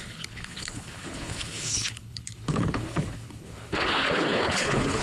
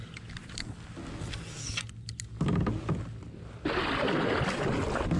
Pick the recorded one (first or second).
second